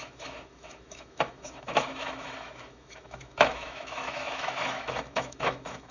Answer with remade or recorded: remade